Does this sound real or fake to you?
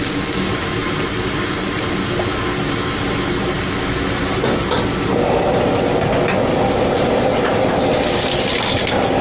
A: real